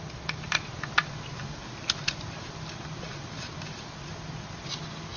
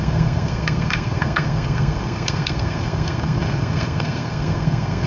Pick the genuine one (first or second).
first